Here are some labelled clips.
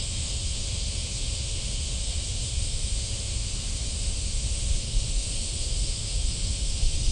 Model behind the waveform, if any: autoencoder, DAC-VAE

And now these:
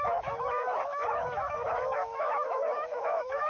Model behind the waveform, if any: autoencoder, DAC-VAE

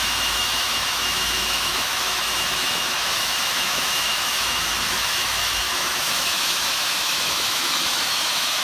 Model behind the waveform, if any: autoencoder, DAC-VAE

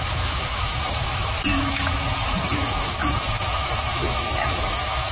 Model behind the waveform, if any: autoencoder, DAC-VAE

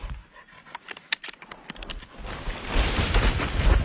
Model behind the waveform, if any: none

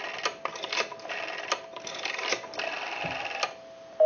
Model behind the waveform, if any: none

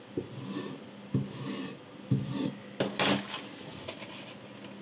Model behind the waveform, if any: none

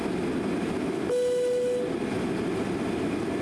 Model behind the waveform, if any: none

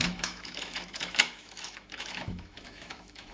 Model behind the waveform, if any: autoencoder, DAC-VAE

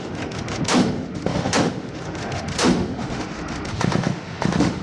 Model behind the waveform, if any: autoencoder, DAC-VAE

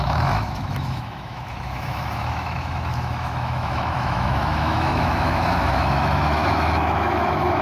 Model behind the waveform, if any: autoencoder, DAC-VAE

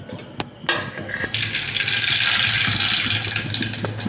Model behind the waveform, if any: none